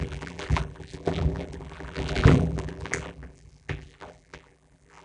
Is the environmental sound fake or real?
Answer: fake